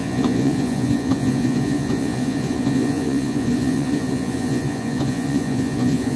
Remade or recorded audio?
remade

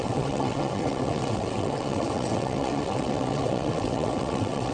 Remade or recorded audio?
remade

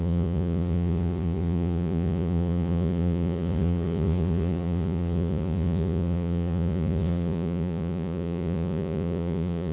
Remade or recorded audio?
remade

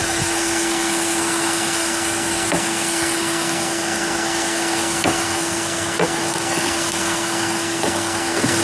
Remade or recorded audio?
remade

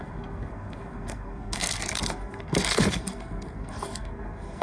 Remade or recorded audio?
remade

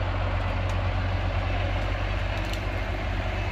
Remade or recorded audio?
recorded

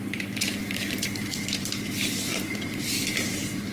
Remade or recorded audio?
remade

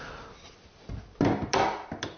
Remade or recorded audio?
recorded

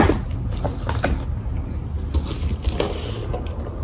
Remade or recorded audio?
recorded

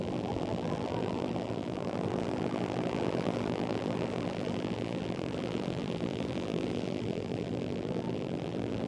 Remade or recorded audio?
remade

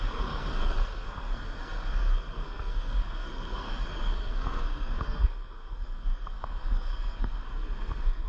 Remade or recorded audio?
remade